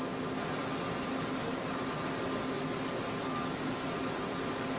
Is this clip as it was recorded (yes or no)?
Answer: yes